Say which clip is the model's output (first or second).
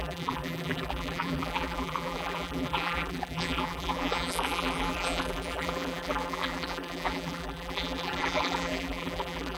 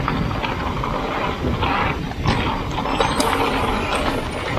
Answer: first